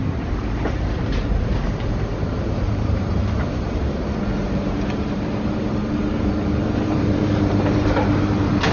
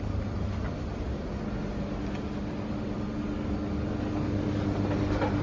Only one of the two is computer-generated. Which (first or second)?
first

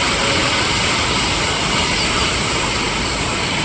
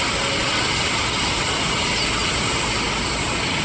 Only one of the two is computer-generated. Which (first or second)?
first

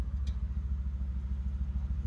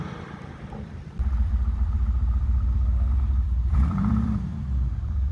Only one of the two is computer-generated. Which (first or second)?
second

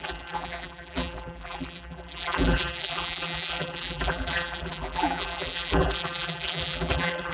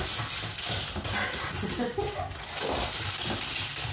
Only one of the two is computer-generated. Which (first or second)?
first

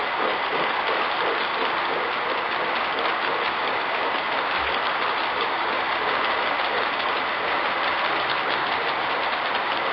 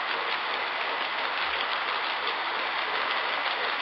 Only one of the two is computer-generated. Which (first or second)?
first